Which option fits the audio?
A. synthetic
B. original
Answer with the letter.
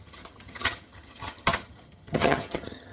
A